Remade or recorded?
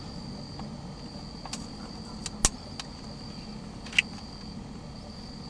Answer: recorded